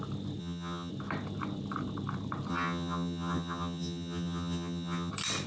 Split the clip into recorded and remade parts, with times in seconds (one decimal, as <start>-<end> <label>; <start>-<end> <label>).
0.0-0.4 recorded; 0.4-0.9 remade; 0.9-2.5 recorded; 2.5-5.1 remade; 5.1-5.5 recorded